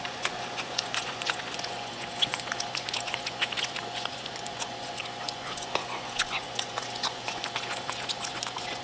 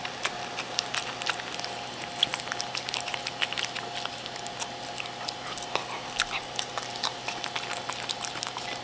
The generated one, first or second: first